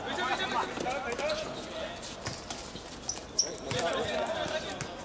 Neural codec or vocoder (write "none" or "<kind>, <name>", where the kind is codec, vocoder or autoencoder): none